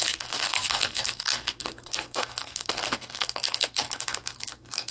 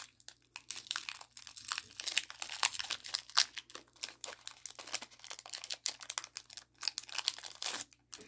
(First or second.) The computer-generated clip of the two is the first